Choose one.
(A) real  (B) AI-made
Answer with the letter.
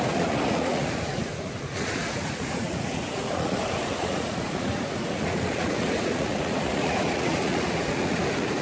B